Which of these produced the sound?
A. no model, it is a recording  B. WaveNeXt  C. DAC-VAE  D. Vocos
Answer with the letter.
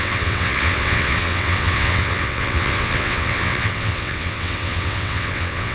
B